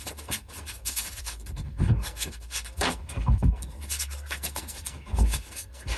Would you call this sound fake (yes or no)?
yes